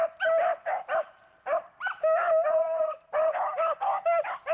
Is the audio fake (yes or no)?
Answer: no